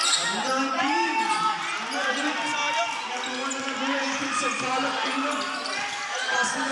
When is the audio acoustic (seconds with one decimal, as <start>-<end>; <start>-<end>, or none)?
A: 0.0-6.7

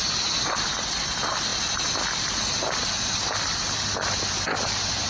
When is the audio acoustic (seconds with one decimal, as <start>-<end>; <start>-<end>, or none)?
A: 0.0-5.1

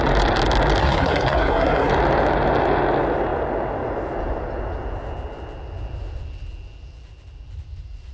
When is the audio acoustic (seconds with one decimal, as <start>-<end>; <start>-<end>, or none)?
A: 0.0-0.8; 1.9-8.1

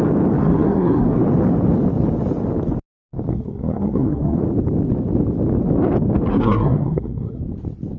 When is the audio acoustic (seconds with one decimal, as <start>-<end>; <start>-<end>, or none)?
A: 0.0-0.4; 1.2-3.3; 4.4-6.3; 7.4-8.0

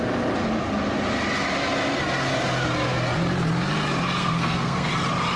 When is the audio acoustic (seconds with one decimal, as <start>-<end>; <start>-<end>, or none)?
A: 0.0-4.2; 4.9-5.4

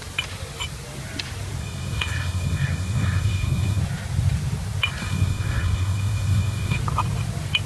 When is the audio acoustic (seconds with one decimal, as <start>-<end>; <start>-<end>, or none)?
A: 0.0-1.6; 3.8-5.0; 6.8-7.7

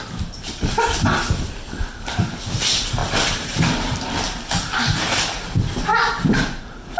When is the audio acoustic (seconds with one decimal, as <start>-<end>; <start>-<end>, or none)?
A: 0.0-7.0